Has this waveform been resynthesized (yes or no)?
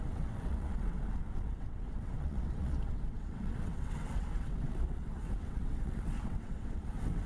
yes